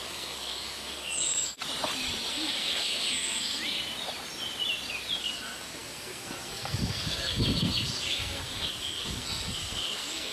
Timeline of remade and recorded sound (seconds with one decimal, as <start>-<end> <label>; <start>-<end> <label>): 0.0-1.6 remade; 1.6-2.3 recorded; 2.3-3.6 remade; 3.6-5.2 recorded; 5.2-10.3 remade